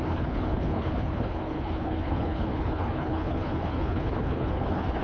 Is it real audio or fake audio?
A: fake